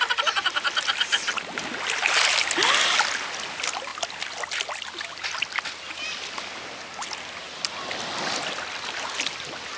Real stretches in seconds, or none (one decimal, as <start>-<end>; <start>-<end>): 0.0-9.8